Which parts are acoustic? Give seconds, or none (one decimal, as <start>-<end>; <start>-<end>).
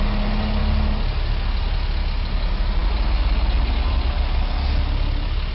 0.0-5.5